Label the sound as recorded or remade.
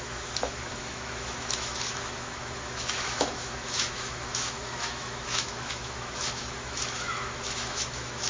remade